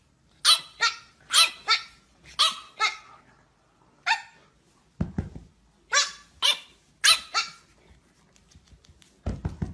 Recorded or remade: recorded